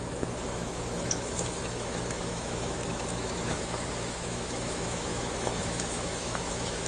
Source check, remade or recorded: remade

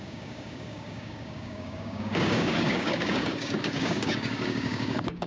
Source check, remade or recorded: remade